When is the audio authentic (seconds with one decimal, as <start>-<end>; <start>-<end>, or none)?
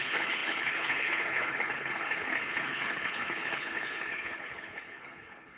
none